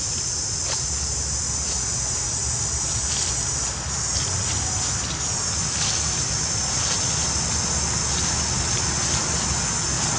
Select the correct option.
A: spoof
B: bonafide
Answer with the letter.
B